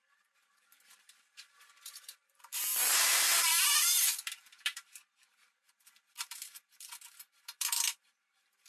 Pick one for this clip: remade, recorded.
remade